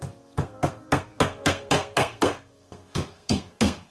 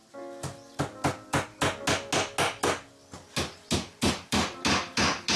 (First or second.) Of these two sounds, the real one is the second